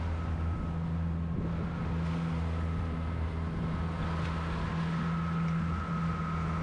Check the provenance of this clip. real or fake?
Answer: real